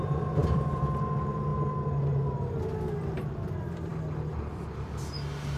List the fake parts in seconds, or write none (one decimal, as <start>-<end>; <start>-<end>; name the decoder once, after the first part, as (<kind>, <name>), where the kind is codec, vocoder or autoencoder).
0.4-1.0 (vocoder, BigVGAN v2)